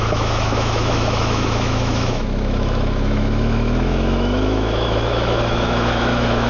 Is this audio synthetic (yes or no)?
yes